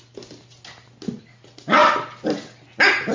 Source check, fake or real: real